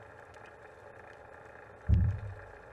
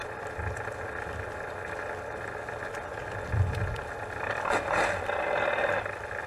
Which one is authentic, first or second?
second